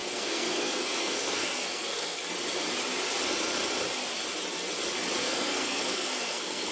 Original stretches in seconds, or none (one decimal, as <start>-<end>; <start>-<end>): 2.2-5.2